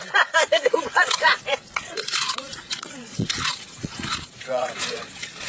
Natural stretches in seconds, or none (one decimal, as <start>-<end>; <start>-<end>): 0.0-0.6